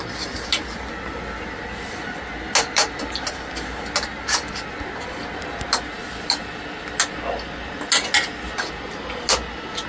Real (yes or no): yes